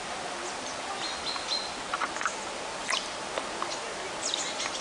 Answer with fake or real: real